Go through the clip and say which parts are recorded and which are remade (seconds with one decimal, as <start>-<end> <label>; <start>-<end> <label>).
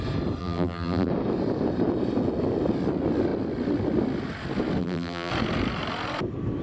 0.0-0.4 recorded; 0.4-1.1 remade; 1.1-4.8 recorded; 4.8-5.3 remade; 5.3-6.6 recorded